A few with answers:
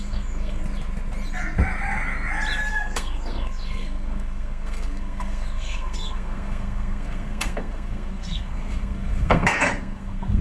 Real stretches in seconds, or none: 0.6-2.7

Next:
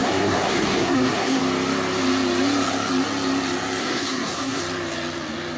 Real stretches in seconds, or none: 1.4-3.8; 4.6-5.6

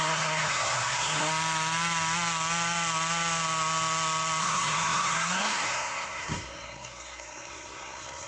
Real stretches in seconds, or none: 1.3-4.4